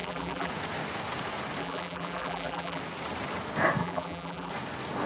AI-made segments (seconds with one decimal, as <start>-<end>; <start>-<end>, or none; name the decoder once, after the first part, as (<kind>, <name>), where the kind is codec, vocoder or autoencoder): 0.0-0.5 (vocoder, BigVGAN v2); 1.6-2.8; 3.8-4.5